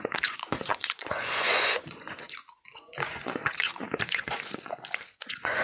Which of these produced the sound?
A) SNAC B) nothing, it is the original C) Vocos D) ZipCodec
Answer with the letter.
C